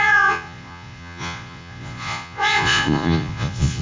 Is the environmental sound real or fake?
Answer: fake